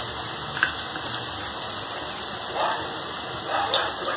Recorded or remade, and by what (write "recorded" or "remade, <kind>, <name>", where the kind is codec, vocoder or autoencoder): recorded